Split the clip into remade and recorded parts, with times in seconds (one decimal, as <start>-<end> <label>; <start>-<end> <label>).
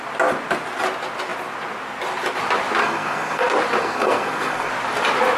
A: 0.0-2.8 recorded; 2.8-3.4 remade; 3.4-3.8 recorded; 3.8-4.7 remade; 4.7-5.4 recorded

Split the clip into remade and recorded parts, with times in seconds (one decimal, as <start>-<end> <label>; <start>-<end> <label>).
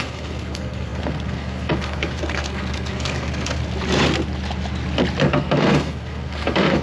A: 0.0-3.6 remade; 3.6-5.2 recorded; 5.2-6.8 remade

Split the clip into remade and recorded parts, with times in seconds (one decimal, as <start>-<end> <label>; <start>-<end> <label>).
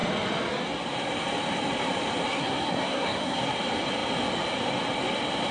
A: 0.0-2.3 recorded; 2.3-3.4 remade; 3.4-5.5 recorded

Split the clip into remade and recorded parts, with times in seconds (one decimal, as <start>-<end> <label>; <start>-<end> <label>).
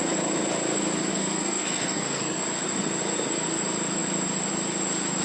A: 0.0-1.1 recorded; 1.1-2.4 remade; 2.4-5.2 recorded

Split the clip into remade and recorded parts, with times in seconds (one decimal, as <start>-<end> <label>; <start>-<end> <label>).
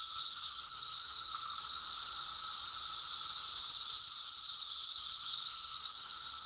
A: 0.0-1.7 remade; 1.7-4.6 recorded; 4.6-6.5 remade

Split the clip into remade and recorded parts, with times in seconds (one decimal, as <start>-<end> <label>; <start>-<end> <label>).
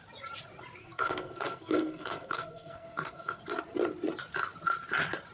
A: 0.0-0.8 recorded; 0.8-3.4 remade; 3.4-5.3 recorded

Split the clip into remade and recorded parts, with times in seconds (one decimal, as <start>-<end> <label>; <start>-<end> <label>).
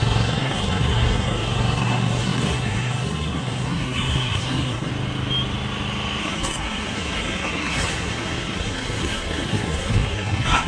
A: 0.0-4.9 remade; 4.9-6.2 recorded; 6.2-10.7 remade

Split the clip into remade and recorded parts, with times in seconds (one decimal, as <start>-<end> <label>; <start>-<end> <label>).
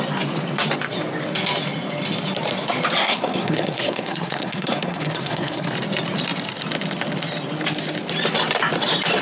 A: 0.0-3.0 recorded; 3.0-5.7 remade; 5.7-9.2 recorded